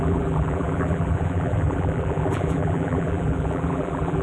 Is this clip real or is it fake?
fake